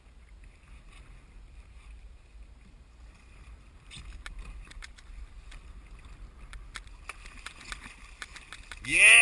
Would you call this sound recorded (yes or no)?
yes